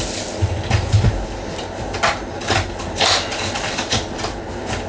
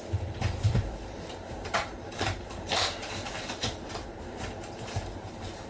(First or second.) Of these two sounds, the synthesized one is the second